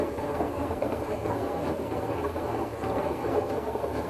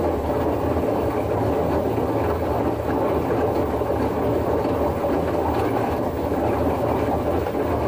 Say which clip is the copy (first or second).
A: first